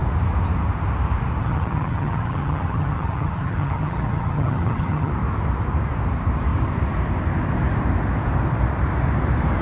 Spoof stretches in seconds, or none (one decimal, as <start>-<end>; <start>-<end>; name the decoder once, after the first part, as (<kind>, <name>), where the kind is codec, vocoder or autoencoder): 1.4-5.1 (vocoder, HiFi-GAN)